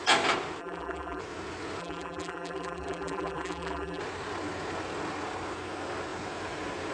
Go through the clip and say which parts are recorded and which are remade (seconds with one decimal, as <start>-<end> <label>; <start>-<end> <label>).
0.0-0.6 recorded; 0.6-1.2 remade; 1.2-1.8 recorded; 1.8-4.0 remade; 4.0-6.9 recorded